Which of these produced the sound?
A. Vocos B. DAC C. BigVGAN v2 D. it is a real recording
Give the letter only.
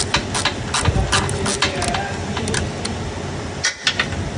D